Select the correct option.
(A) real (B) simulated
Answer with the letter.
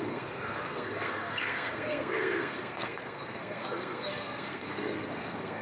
B